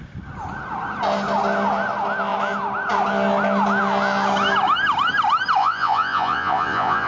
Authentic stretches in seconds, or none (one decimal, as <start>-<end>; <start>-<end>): 0.0-5.6